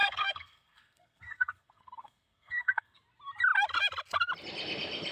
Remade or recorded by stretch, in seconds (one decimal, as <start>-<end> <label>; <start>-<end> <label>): 0.0-3.0 remade; 3.0-5.1 recorded

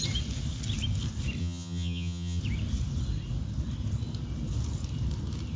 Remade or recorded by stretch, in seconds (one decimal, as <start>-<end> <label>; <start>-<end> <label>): 0.0-1.4 recorded; 1.4-2.4 remade; 2.4-5.6 recorded

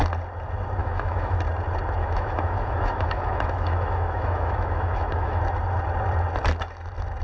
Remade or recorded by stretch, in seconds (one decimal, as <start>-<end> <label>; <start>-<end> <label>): 0.0-0.8 recorded; 0.8-1.4 remade; 1.4-2.0 recorded; 2.0-5.4 remade; 5.4-7.2 recorded

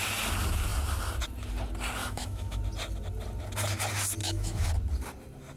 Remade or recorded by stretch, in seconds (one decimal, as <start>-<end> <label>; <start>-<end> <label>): 0.0-2.0 recorded; 2.0-2.6 remade; 2.6-4.2 recorded; 4.2-4.7 remade; 4.7-5.6 recorded